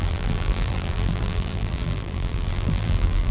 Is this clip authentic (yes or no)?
no